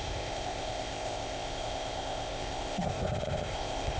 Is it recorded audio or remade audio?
remade